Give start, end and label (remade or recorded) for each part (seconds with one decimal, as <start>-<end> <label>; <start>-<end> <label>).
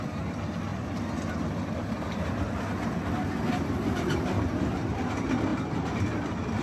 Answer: 0.0-6.6 recorded